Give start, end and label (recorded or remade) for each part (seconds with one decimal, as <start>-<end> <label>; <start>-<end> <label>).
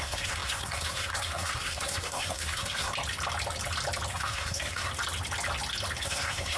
0.0-2.9 remade; 2.9-4.1 recorded; 4.1-4.9 remade; 4.9-6.0 recorded; 6.0-6.6 remade